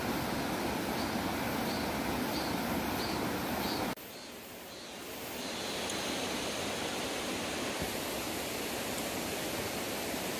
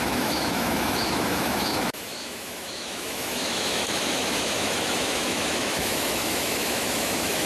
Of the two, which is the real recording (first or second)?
first